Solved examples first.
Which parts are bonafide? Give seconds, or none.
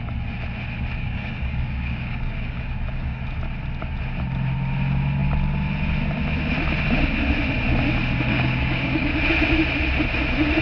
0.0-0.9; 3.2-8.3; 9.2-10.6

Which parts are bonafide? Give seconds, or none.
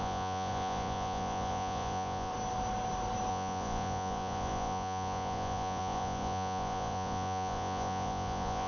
2.3-3.3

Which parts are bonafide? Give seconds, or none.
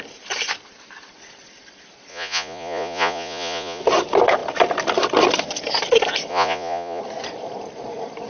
0.0-2.1; 3.8-6.3; 7.0-8.3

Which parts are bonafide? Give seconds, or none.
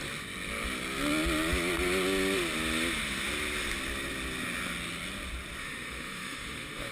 0.0-5.6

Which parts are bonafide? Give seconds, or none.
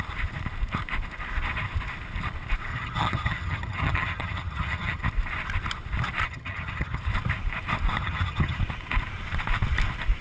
0.0-2.7; 5.0-6.2; 7.0-8.0; 8.6-10.2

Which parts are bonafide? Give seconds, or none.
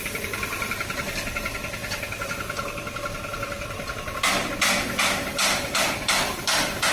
0.0-1.8; 4.5-5.3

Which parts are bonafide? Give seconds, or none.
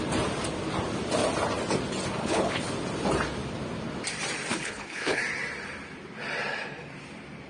0.0-2.2; 2.7-4.5; 5.2-7.5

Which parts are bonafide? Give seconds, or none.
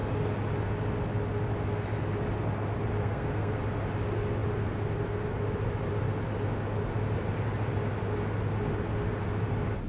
0.0-3.0; 3.6-9.9